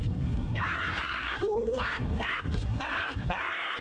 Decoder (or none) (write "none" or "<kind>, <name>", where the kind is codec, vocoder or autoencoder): codec, SNAC